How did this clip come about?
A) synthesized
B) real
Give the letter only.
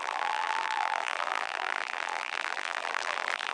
A